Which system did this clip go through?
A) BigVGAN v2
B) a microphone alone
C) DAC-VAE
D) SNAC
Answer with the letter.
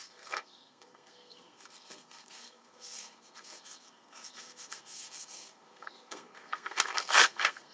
D